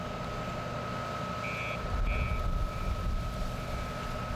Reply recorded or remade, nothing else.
recorded